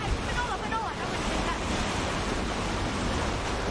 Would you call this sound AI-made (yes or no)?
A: yes